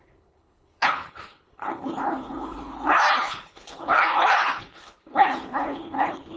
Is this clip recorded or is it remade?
remade